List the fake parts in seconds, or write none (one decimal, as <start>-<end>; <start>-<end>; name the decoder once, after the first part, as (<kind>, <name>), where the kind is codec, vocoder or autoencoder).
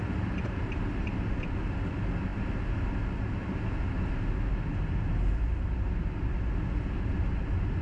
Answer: none